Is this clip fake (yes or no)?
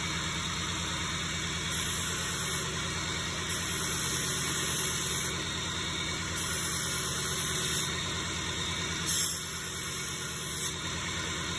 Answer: no